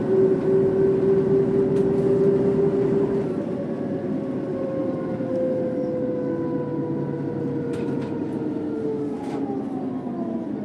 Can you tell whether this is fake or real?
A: real